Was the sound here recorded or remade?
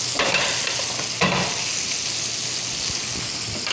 recorded